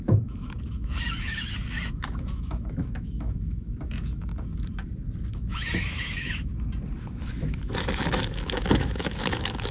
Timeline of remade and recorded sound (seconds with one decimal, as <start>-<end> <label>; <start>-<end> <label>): 0.0-4.3 remade; 4.3-5.3 recorded; 5.3-6.5 remade; 6.5-7.1 recorded; 7.1-9.7 remade